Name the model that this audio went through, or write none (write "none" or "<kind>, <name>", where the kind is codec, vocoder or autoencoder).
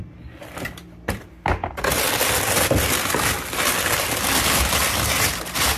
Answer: none